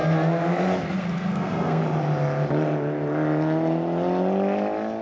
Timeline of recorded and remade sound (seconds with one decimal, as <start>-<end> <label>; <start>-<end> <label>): 0.0-1.0 recorded; 1.0-1.8 remade; 1.8-5.0 recorded